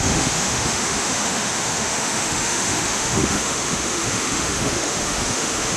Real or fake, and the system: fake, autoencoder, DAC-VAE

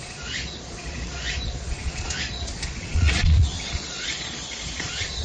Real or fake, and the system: fake, vocoder, Vocos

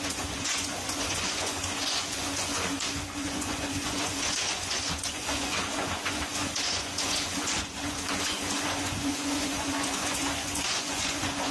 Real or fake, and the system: fake, vocoder, Vocos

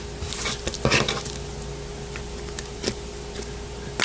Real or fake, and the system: real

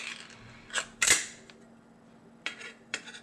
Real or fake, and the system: fake, vocoder, BigVGAN v2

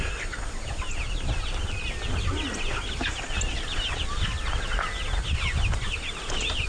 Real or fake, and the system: real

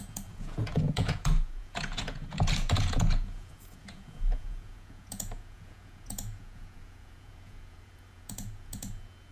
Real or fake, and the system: fake, vocoder, Vocos